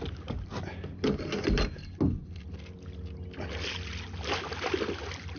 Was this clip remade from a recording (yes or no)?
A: no